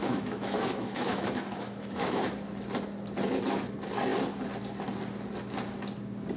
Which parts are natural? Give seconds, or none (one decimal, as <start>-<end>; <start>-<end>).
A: 2.3-6.4

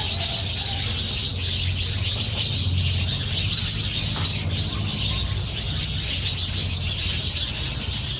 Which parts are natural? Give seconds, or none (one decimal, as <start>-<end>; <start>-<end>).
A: 0.0-8.2

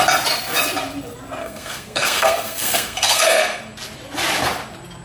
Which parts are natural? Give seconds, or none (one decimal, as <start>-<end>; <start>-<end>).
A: 0.0-1.4; 3.6-5.0

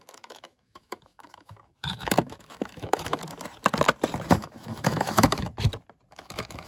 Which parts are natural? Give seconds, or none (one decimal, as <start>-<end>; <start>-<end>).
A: 3.2-4.3; 5.5-6.1

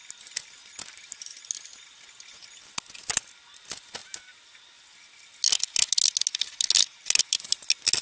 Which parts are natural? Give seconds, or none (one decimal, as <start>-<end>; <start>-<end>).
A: 0.0-8.0

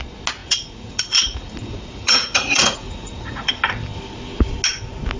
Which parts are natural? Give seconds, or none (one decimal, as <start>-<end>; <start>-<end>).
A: 0.0-0.4; 3.5-5.2

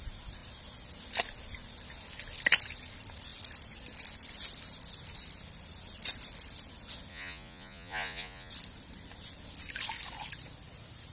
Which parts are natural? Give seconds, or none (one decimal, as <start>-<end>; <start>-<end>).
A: 0.0-7.1; 8.5-11.1

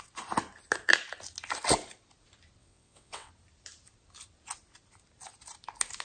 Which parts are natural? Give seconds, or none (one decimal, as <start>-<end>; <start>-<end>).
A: 0.0-2.6; 3.3-6.0